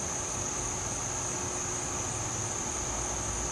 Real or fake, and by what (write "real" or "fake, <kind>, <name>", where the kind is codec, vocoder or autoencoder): real